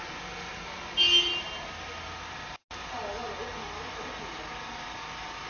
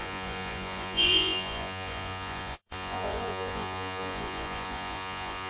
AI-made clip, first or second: second